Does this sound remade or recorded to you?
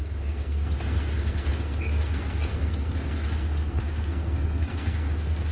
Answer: remade